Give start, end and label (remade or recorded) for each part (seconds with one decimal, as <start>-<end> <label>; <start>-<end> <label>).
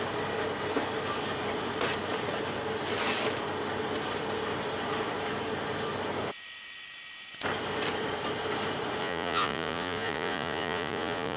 0.0-9.0 recorded; 9.0-11.4 remade